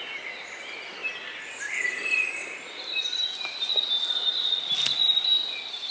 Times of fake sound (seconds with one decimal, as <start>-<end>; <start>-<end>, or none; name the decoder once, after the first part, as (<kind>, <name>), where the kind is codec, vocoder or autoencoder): none